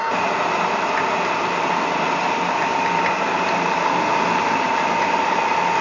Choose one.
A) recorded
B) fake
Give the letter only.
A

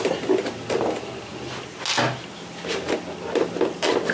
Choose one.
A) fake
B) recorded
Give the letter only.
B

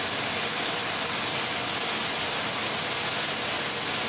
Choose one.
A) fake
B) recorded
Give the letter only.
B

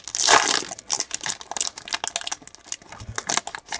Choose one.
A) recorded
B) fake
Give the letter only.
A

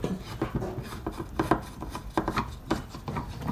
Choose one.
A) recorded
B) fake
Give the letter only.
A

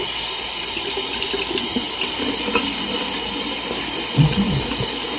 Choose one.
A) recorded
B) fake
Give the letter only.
A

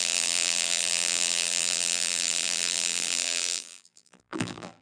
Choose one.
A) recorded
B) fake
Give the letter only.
B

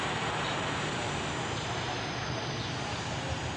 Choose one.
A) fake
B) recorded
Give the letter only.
A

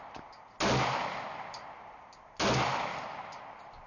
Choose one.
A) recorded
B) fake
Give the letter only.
A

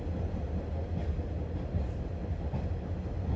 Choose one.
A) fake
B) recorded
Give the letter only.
B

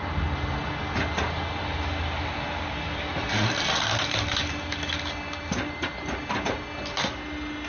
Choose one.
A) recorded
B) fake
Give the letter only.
A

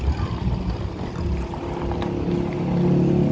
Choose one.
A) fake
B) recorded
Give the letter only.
B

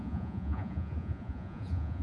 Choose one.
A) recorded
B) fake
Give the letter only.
B